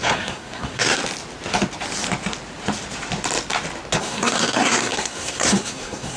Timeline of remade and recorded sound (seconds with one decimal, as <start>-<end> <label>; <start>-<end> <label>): 0.0-1.0 remade; 1.0-4.0 recorded; 4.0-6.2 remade